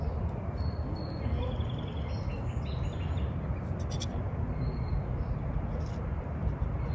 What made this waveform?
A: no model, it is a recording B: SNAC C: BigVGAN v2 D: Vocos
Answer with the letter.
A